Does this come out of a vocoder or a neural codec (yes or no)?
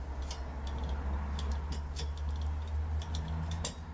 no